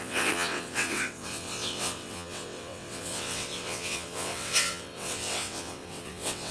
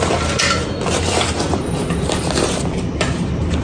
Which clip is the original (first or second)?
second